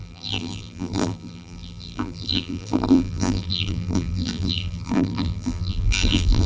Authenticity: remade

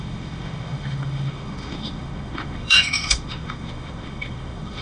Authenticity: remade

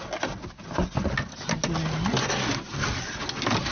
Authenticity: recorded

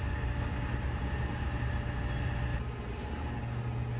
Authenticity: recorded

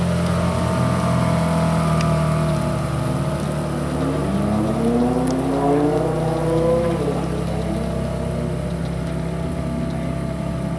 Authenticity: recorded